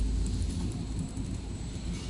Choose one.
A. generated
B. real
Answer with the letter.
B